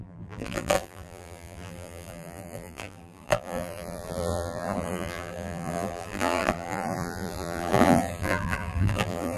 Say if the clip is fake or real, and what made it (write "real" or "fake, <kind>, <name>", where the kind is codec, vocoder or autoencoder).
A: fake, vocoder, BigVGAN v2